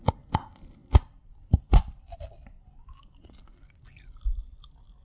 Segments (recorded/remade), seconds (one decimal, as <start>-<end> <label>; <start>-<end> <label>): 0.0-5.0 recorded